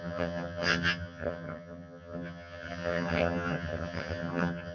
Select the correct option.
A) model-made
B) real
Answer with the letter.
A